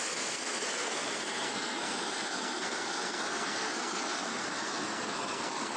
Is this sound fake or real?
fake